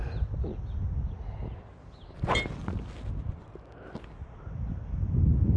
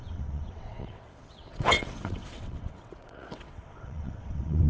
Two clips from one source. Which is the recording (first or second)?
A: first